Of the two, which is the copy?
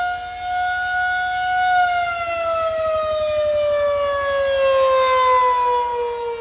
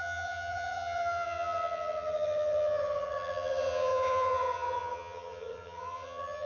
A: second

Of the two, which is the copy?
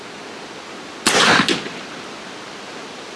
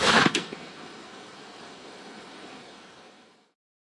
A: second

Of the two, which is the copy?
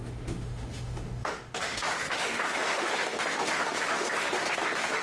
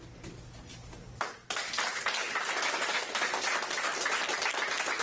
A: first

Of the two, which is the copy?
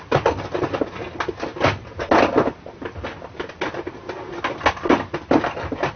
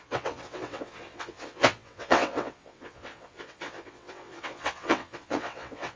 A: second